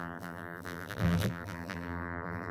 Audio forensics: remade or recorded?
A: remade